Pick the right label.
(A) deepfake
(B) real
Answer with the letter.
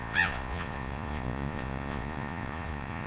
A